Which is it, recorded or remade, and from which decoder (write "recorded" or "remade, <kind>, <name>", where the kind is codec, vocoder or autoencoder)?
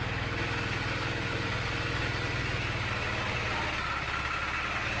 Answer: recorded